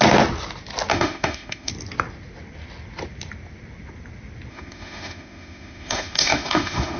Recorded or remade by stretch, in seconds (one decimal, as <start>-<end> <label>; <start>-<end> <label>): 0.0-0.9 recorded; 0.9-1.7 remade; 1.7-4.5 recorded; 4.5-7.0 remade